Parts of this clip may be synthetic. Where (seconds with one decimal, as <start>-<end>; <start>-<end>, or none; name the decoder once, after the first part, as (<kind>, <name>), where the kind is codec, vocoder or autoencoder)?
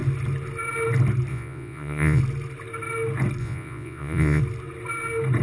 1.3-2.2 (vocoder, Vocos); 3.4-4.4